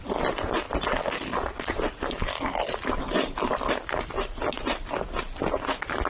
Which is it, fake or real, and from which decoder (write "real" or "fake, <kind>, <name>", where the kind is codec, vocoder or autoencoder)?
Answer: real